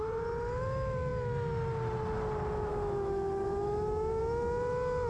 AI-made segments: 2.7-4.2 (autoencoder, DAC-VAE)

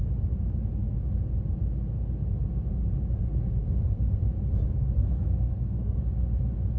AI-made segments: 3.6-4.2 (codec, SNAC); 5.0-6.0

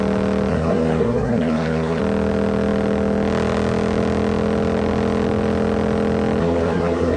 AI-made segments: 0.5-2.0 (codec, SNAC); 6.4-7.2

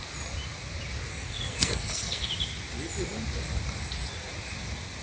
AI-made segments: 1.1-2.3 (codec, SNAC)

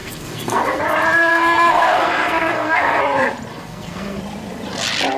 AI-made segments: 0.0-0.8 (codec, SNAC); 1.3-3.0; 3.5-4.2